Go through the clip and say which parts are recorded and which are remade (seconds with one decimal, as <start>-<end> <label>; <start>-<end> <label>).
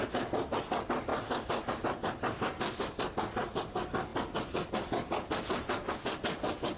0.0-6.8 recorded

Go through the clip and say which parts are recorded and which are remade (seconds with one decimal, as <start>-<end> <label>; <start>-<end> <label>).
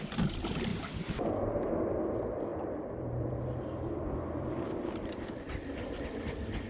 0.0-6.7 remade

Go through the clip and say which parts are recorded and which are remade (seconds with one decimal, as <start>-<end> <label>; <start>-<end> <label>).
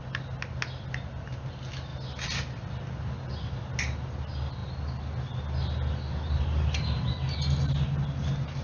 0.0-8.6 recorded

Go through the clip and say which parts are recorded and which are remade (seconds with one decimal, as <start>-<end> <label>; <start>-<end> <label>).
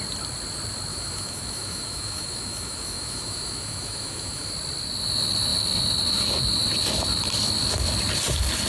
0.0-0.9 recorded; 0.9-4.5 remade; 4.5-8.7 recorded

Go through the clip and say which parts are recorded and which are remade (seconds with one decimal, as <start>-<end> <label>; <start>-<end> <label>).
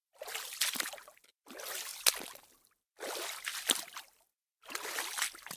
0.0-5.6 recorded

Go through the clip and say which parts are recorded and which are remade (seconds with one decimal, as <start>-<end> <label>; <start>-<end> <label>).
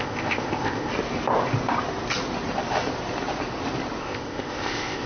0.0-0.9 remade; 0.9-4.0 recorded; 4.0-5.1 remade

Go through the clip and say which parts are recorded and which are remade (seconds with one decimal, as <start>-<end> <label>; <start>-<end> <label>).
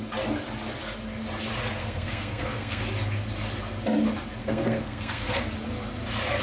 0.0-1.8 recorded; 1.8-2.8 remade; 2.8-4.4 recorded; 4.4-5.4 remade; 5.4-6.4 recorded